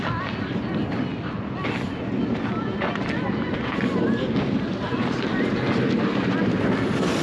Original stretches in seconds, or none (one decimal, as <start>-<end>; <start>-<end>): 0.0-7.2